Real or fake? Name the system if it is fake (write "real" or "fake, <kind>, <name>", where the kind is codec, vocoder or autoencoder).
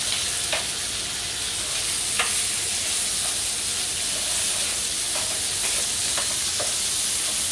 real